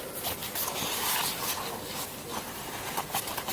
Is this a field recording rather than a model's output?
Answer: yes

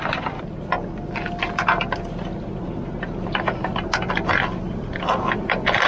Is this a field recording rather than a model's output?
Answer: yes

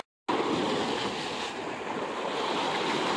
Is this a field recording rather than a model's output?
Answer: yes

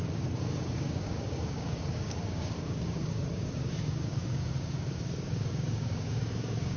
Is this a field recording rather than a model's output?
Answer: no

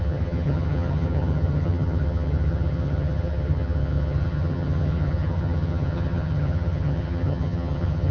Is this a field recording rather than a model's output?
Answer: no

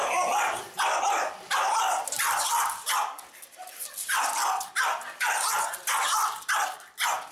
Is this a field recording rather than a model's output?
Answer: yes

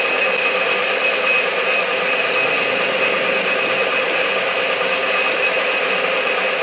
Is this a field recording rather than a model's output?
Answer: yes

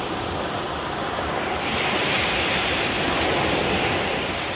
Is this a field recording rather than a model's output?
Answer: yes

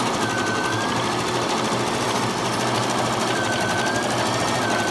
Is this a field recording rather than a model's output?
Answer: yes